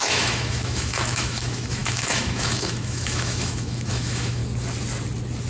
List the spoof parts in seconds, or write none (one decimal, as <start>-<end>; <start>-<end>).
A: 0.0-4.4